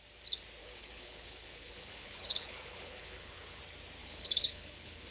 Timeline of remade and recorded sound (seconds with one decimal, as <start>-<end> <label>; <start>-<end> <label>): 0.0-0.6 recorded; 0.6-3.6 remade; 3.6-4.0 recorded; 4.0-5.1 remade